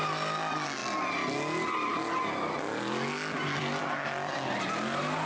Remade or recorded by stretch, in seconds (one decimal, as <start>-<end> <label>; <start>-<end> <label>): 0.0-5.3 recorded